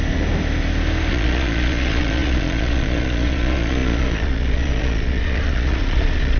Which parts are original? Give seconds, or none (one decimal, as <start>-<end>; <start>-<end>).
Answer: 0.0-1.1